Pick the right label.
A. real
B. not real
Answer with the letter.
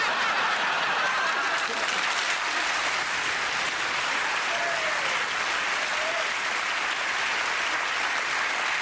A